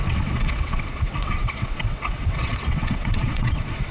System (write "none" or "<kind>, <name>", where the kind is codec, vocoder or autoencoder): vocoder, WaveNeXt